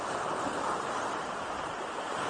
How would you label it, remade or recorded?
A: recorded